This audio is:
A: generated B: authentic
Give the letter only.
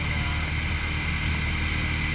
B